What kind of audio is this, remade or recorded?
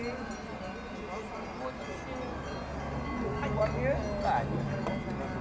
recorded